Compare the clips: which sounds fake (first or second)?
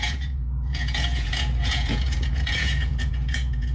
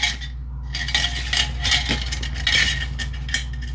first